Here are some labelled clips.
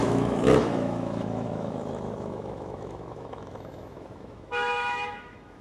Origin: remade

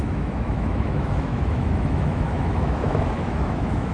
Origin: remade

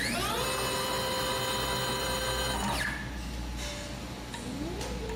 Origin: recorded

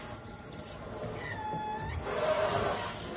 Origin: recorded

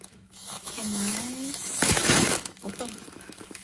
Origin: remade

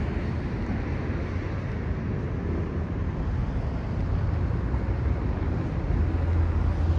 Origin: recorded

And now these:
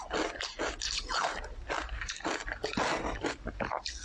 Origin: recorded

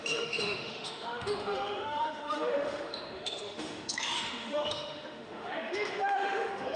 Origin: remade